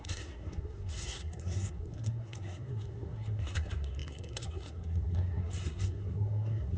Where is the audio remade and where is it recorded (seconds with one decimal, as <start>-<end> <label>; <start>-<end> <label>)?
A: 0.0-6.8 remade